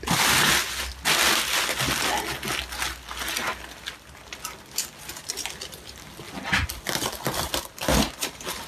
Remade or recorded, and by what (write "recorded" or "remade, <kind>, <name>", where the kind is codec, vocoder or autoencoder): recorded